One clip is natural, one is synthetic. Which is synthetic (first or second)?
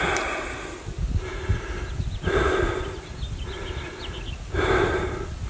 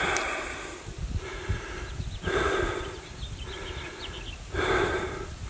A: second